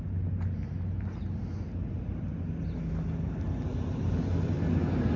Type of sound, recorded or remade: recorded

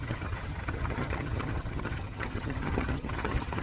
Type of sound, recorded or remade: remade